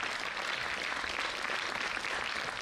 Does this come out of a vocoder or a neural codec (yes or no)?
no